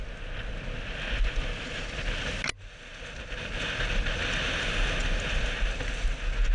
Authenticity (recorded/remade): recorded